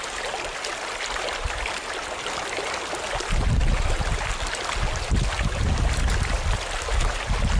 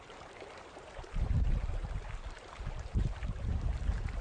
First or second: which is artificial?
second